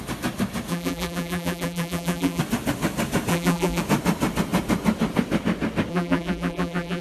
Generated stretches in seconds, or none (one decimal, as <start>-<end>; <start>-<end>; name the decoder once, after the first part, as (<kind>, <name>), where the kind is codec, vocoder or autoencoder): 0.7-2.4 (vocoder, BigVGAN v2); 3.3-3.8; 5.9-7.0